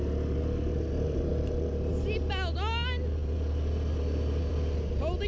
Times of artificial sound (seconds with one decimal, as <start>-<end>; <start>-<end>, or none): none